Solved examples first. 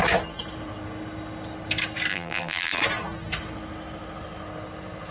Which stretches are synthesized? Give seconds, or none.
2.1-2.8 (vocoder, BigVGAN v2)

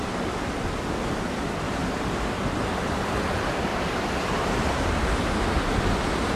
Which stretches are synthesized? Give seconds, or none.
3.7-5.1 (vocoder, BigVGAN v2)